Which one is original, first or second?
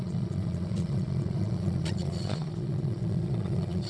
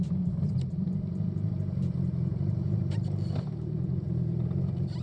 second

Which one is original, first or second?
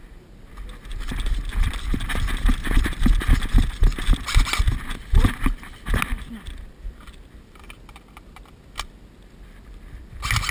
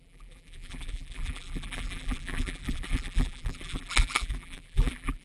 first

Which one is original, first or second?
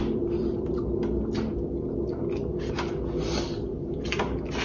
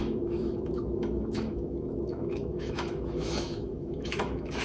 first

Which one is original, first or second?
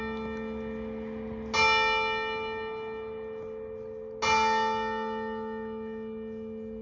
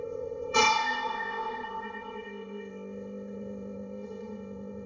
first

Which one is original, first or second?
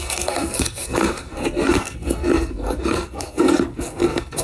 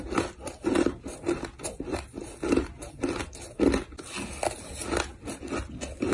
second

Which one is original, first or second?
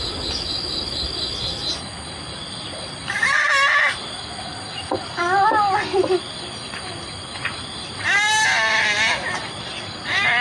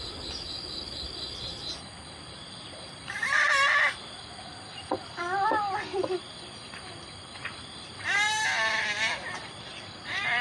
first